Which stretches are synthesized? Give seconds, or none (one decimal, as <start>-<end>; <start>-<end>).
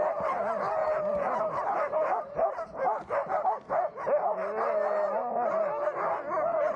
none